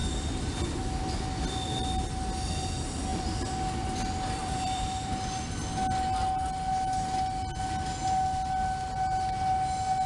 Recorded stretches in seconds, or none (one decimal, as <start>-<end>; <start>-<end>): 0.8-3.1; 5.4-10.1